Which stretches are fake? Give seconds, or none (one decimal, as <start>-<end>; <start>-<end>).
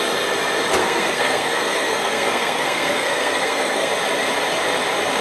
0.8-3.9